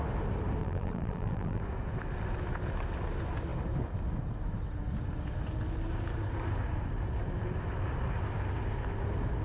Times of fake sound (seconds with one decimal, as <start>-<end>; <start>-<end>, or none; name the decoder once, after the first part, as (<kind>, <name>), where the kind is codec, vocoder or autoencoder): 0.6-1.6 (vocoder, BigVGAN v2)